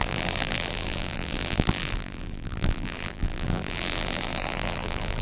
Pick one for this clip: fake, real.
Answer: fake